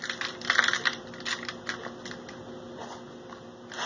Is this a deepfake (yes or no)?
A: no